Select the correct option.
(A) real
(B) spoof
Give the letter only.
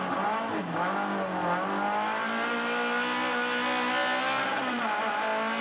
A